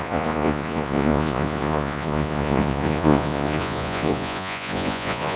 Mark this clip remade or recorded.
remade